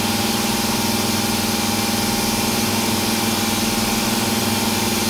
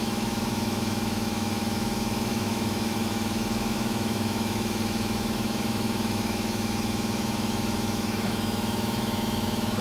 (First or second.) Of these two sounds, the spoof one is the second